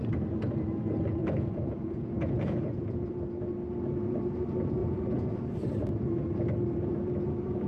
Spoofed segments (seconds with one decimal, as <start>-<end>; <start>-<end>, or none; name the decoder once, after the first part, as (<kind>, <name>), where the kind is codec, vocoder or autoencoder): 1.2-3.1 (vocoder, Vocos); 4.8-5.3